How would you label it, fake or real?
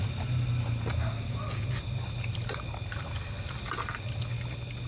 real